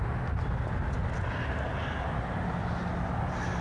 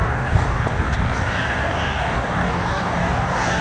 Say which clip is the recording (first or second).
first